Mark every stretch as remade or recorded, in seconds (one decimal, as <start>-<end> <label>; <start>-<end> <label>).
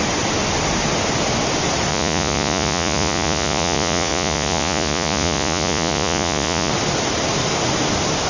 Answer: 0.0-1.9 recorded; 1.9-6.7 remade; 6.7-8.3 recorded